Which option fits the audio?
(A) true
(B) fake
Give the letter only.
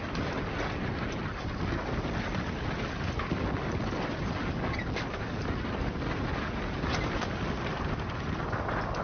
A